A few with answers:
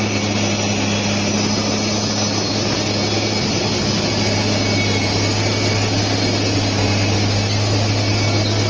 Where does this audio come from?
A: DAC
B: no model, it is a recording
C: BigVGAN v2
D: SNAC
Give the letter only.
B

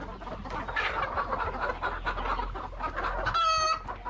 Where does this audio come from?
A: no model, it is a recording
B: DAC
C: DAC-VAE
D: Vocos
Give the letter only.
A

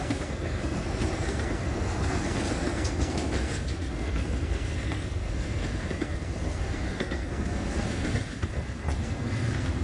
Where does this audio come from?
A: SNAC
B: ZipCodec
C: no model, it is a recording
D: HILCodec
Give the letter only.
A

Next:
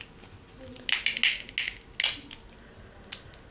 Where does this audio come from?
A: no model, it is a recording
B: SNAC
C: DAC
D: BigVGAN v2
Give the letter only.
A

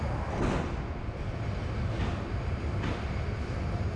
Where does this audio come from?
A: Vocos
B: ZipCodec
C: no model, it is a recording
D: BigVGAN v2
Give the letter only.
C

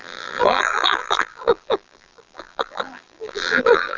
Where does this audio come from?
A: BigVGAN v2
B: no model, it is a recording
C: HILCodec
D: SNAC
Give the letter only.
A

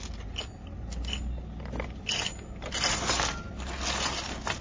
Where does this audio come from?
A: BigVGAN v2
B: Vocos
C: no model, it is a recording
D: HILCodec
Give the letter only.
C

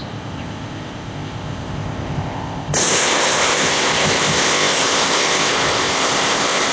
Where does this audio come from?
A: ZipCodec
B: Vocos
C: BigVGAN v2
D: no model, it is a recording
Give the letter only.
A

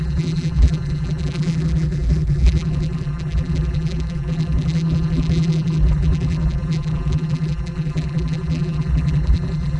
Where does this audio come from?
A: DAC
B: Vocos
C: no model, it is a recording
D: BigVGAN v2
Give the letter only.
D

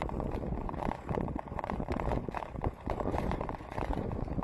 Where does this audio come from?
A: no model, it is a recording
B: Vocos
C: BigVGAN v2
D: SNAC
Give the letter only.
B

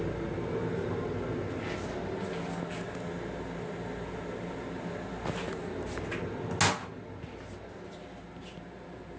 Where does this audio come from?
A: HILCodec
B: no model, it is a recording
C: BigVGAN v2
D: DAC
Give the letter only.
B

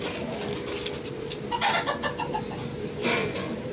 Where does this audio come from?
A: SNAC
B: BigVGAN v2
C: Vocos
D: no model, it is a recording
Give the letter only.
D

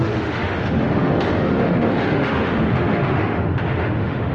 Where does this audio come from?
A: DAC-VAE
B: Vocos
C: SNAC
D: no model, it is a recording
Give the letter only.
A